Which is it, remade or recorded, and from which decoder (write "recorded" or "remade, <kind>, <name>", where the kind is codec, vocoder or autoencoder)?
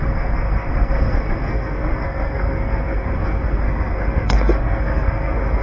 remade, codec, SNAC